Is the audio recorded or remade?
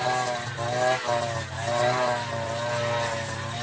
recorded